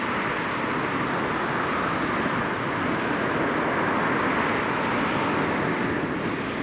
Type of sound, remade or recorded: recorded